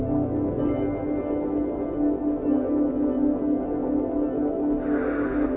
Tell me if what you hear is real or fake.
real